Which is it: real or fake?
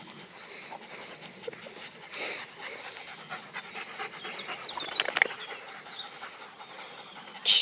real